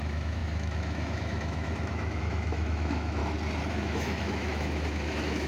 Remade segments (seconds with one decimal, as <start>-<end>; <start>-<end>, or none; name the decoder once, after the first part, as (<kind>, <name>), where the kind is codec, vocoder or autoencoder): 0.0-3.2 (autoencoder, DAC-VAE); 3.7-5.5